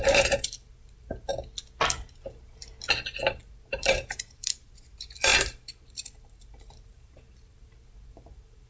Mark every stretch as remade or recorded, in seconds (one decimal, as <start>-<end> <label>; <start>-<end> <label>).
0.0-1.3 remade; 1.3-1.9 recorded; 1.9-2.6 remade; 2.6-3.7 recorded; 3.7-8.7 remade